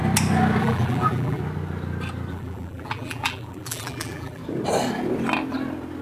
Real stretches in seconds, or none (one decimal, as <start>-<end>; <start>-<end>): 0.0-0.6; 1.4-2.3; 4.4-6.0